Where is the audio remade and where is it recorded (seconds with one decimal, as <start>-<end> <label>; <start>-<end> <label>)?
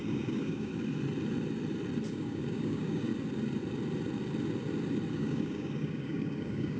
0.0-0.7 remade; 0.7-2.1 recorded; 2.1-3.1 remade; 3.1-5.1 recorded; 5.1-6.8 remade